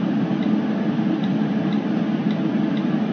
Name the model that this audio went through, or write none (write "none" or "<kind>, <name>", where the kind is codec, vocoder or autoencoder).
none